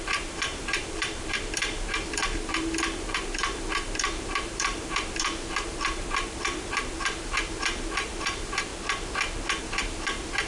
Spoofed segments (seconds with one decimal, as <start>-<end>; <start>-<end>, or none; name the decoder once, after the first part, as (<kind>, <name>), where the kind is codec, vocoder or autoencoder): 0.0-8.7 (vocoder, BigVGAN v2); 9.6-10.5